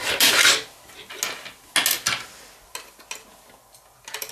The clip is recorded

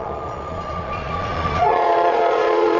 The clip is remade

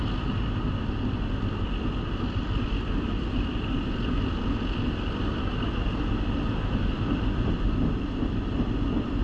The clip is recorded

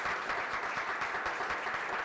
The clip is recorded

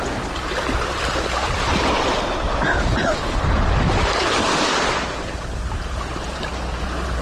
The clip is remade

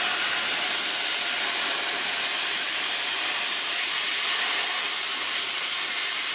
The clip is recorded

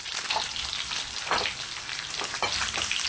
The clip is recorded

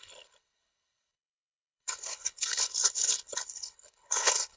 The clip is remade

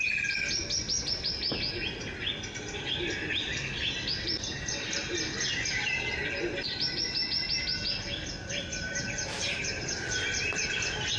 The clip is recorded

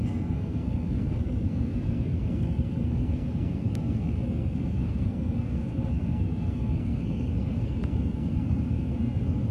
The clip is remade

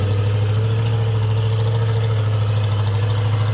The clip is recorded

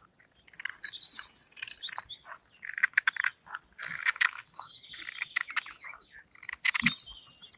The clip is recorded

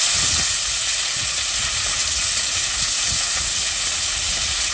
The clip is remade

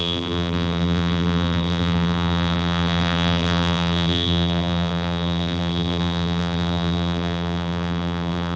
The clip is remade